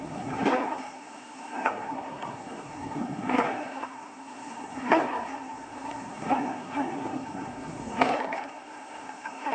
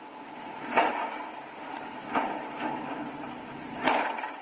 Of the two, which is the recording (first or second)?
second